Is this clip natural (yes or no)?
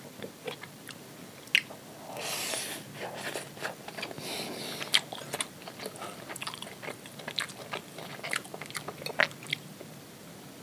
yes